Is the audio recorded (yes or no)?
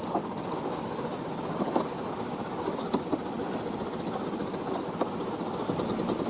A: yes